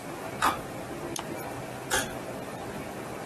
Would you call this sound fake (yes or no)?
no